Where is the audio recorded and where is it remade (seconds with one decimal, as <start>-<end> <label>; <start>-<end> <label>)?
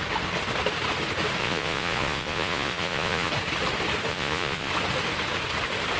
0.0-1.4 recorded; 1.4-3.3 remade; 3.3-4.1 recorded; 4.1-4.7 remade; 4.7-6.0 recorded